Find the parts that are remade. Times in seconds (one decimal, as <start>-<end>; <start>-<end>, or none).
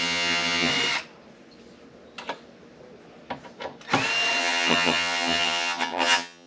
0.0-0.7; 4.4-6.5